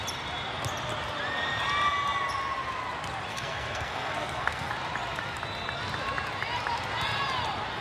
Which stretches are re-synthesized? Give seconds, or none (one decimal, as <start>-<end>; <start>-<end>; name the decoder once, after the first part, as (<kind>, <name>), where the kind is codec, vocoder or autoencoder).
3.3-4.7 (codec, SNAC)